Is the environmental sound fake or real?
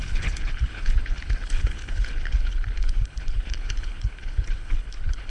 fake